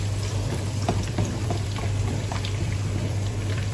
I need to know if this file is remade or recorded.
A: remade